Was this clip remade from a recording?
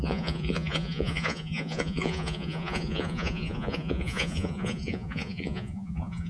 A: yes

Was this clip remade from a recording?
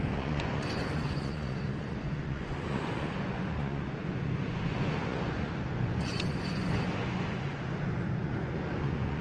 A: yes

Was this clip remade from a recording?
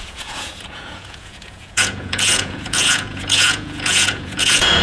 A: yes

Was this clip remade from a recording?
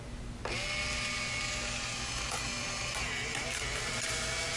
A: no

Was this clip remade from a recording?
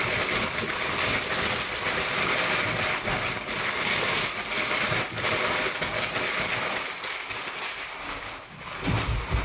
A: no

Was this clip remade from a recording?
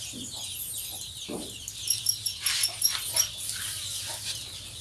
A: no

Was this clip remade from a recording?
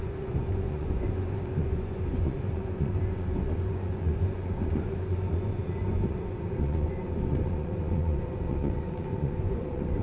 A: yes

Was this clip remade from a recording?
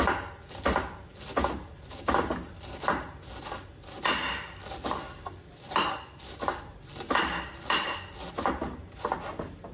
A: no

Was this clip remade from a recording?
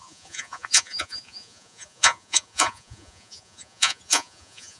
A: yes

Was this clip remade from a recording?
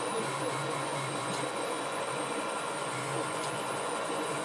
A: yes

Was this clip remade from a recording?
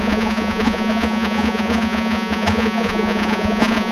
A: yes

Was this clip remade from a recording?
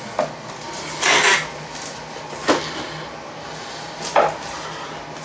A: no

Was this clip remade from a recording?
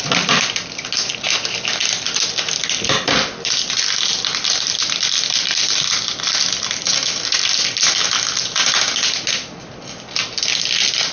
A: no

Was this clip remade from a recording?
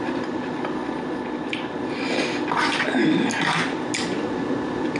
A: no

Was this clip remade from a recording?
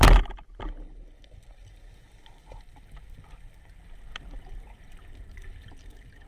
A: no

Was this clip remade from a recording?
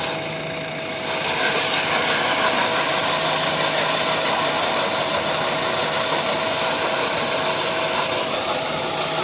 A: no